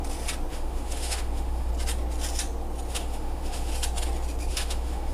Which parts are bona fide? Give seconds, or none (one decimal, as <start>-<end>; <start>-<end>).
0.0-0.5; 1.7-2.9; 3.7-4.5